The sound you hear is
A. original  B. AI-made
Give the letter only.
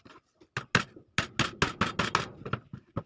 A